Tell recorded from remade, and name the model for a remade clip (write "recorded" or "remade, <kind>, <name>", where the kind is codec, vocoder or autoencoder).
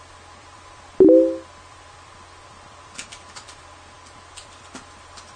recorded